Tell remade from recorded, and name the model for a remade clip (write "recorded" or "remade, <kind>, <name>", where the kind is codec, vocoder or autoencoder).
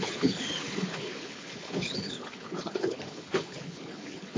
remade, codec, HILCodec